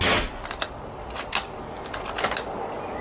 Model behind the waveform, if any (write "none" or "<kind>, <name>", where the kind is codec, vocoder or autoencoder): none